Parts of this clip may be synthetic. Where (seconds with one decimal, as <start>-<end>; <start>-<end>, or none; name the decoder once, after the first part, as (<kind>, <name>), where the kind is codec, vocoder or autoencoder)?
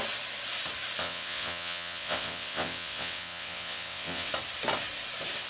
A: 1.0-4.3 (vocoder, WaveNeXt)